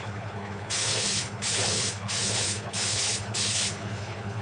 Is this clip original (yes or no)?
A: no